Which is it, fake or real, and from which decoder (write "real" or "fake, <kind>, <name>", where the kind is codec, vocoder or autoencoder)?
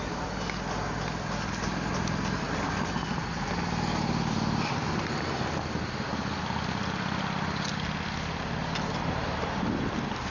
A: real